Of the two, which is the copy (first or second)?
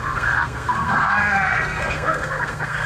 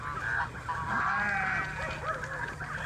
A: first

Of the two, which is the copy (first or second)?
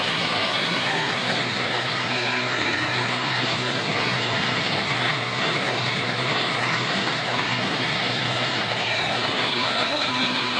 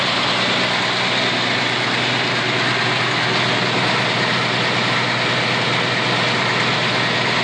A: first